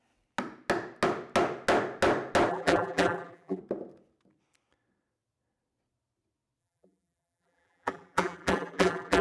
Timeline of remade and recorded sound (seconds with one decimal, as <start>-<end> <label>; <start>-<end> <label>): 0.0-2.5 recorded; 2.5-3.6 remade; 3.6-6.6 recorded; 6.6-9.2 remade